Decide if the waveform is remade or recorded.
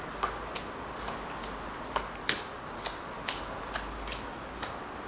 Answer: recorded